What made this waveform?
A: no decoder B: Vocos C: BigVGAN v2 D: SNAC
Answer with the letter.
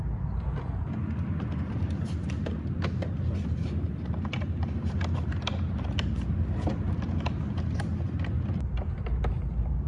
A